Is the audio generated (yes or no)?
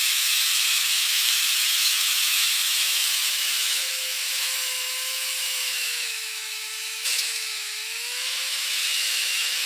yes